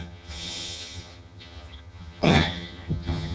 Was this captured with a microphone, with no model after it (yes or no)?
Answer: no